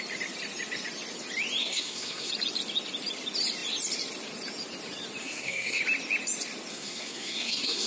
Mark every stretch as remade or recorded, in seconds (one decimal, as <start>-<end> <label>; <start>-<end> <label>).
0.0-1.6 recorded; 1.6-2.3 remade; 2.3-5.2 recorded; 5.2-5.8 remade; 5.8-6.7 recorded; 6.7-7.9 remade